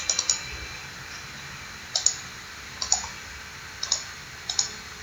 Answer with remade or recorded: recorded